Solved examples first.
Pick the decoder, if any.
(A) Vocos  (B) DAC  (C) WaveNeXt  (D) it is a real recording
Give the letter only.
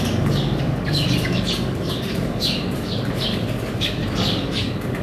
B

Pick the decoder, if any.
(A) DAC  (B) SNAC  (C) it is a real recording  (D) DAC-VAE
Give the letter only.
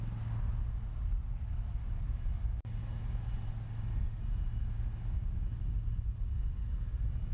C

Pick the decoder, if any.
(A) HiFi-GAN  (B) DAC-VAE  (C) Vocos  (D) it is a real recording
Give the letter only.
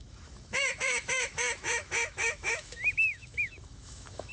B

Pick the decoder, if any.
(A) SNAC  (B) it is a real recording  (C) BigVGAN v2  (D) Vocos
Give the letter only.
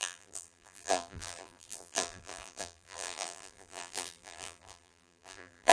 C